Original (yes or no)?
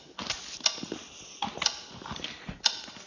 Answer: yes